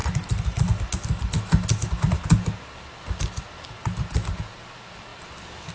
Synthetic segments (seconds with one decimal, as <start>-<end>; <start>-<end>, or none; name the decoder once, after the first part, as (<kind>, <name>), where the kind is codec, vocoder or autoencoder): none

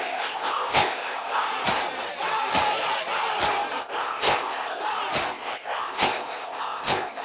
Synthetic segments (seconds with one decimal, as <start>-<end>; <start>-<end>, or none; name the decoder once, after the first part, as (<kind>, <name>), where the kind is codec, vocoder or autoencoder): 0.0-1.5 (codec, ZipCodec); 3.8-4.8; 5.3-7.2

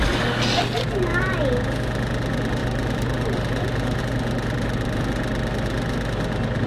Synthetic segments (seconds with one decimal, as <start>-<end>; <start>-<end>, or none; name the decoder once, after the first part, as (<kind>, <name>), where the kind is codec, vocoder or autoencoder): none

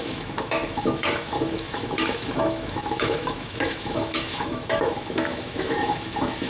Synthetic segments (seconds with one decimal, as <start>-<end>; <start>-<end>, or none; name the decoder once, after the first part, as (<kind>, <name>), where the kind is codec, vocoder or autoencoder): 0.0-6.5 (autoencoder, DAC-VAE)

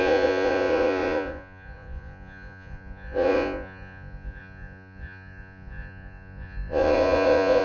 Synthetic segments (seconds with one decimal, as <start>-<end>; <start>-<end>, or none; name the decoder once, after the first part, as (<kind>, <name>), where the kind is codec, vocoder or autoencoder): 0.0-7.6 (vocoder, Vocos)

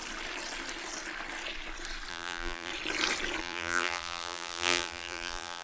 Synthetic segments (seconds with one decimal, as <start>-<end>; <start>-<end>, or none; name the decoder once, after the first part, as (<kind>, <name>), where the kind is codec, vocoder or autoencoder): 2.1-2.7 (vocoder, BigVGAN v2); 3.4-5.6

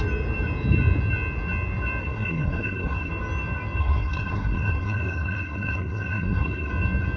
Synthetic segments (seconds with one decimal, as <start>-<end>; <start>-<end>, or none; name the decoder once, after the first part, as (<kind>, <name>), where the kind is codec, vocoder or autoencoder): 2.0-3.1 (codec, SNAC); 3.8-6.7

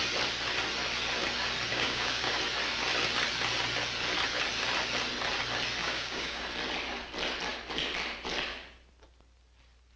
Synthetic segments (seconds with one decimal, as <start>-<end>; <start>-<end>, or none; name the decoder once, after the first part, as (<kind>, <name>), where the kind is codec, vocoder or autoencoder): 1.7-2.3 (codec, DAC); 5.8-6.4